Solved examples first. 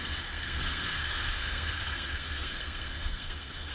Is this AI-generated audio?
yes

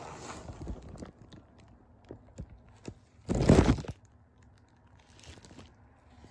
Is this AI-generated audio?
no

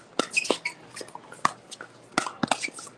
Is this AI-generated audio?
no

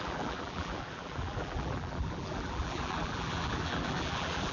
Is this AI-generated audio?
yes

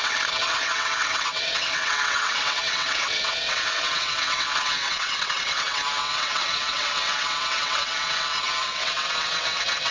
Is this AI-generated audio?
yes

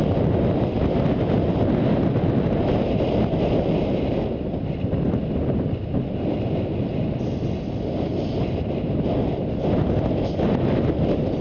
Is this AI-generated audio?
no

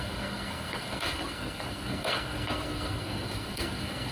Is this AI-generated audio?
yes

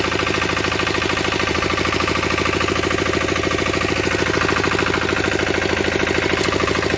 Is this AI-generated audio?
no